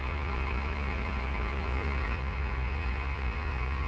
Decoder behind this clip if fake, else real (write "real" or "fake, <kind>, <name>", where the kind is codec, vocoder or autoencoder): fake, vocoder, Vocos